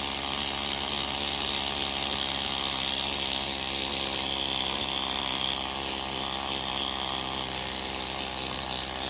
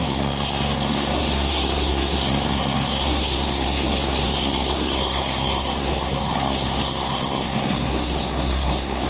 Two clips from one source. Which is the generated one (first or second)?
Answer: second